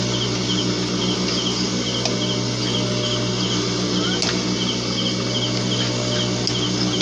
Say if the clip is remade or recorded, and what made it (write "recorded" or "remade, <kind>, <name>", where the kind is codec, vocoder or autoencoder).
recorded